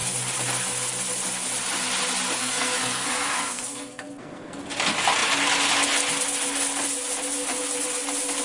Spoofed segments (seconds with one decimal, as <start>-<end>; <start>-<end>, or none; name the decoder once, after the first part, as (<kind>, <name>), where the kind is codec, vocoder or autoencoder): 2.4-4.6 (codec, SNAC)